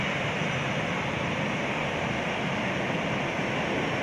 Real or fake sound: fake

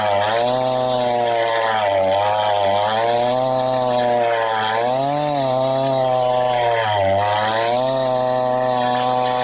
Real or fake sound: real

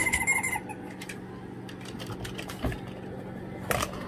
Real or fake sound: real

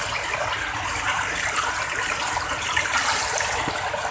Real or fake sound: real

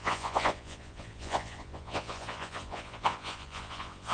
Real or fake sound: fake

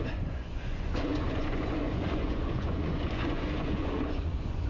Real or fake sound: fake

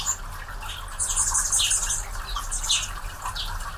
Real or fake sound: real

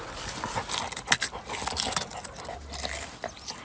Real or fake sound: real